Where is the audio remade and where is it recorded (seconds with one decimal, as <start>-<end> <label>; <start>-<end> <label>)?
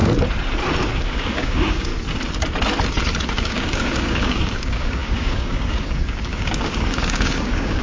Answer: 0.0-1.0 recorded; 1.0-1.9 remade; 1.9-3.3 recorded; 3.3-7.8 remade